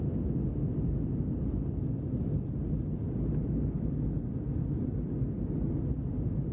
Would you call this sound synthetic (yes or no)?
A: no